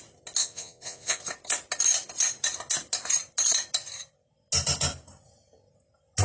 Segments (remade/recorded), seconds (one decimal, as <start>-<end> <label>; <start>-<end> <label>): 0.0-0.4 recorded; 0.4-1.2 remade; 1.2-6.2 recorded